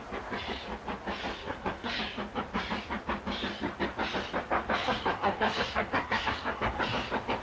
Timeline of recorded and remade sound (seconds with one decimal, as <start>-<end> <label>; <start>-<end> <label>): 0.0-1.3 recorded; 1.3-2.0 remade; 2.0-4.8 recorded; 4.8-6.8 remade; 6.8-7.4 recorded